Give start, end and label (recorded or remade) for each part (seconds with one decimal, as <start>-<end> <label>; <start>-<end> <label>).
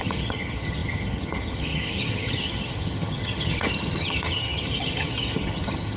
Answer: 0.0-6.0 remade